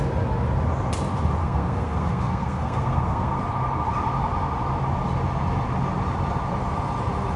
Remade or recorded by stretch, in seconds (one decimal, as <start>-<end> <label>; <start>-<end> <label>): 0.0-1.4 recorded; 1.4-3.4 remade; 3.4-7.4 recorded